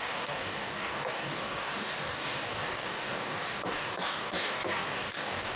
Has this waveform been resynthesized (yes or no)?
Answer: yes